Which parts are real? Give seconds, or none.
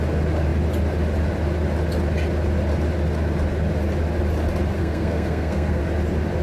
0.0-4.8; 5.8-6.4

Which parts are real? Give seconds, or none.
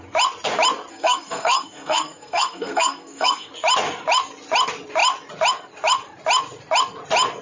0.0-0.9; 3.5-7.4